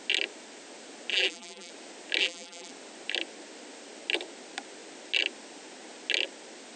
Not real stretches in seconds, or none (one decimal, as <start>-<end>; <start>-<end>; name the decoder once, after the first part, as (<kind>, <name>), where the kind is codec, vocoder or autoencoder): 1.1-1.7 (vocoder, BigVGAN v2); 2.2-2.7